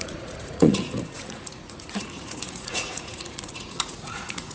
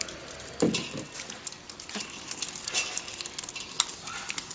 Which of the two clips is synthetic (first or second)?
first